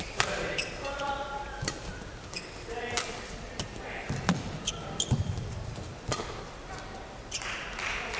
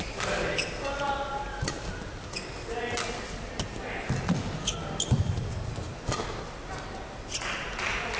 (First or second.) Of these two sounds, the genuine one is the second